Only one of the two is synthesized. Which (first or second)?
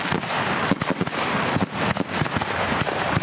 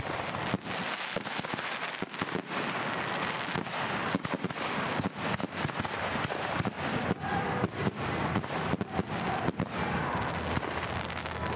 first